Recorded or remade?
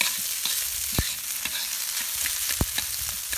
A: recorded